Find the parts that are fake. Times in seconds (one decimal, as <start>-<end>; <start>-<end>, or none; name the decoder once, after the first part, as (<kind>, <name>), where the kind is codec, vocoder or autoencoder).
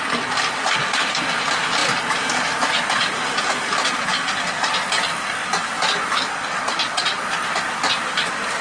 none